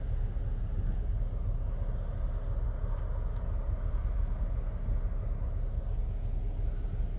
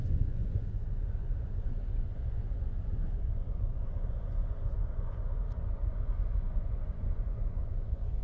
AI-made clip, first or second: second